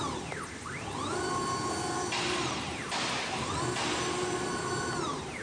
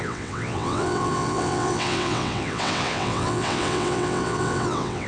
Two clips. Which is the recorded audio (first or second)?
first